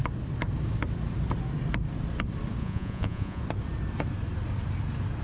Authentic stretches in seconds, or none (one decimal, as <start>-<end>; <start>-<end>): 0.0-2.6; 3.4-5.2